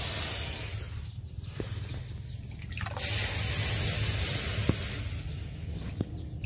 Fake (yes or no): no